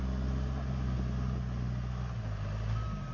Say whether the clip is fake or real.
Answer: real